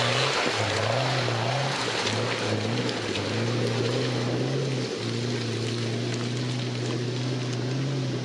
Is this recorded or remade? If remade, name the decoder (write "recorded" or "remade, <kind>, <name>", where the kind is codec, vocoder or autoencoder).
recorded